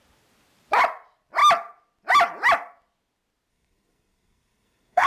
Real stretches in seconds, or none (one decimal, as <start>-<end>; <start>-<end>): 0.0-3.5